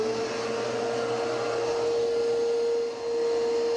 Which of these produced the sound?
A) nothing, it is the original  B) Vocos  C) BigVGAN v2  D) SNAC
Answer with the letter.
A